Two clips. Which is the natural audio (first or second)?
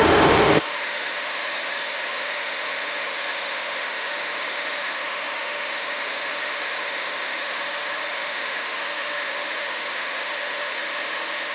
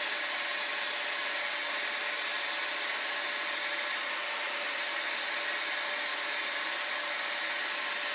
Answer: second